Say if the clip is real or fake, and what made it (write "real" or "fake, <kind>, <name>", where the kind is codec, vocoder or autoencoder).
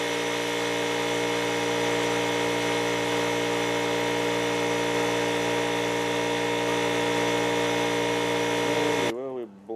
real